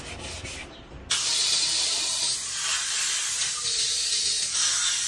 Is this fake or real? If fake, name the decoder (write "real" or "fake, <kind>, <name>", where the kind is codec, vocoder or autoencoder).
real